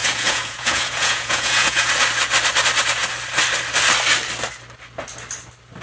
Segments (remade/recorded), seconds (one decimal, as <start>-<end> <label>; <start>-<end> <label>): 0.0-1.9 remade; 1.9-5.8 recorded